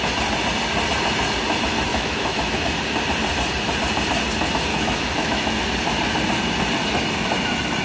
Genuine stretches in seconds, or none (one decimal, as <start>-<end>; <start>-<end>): 0.0-1.9; 2.6-4.7; 5.6-7.8